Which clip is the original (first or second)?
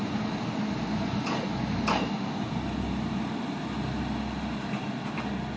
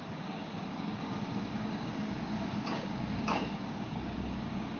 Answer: first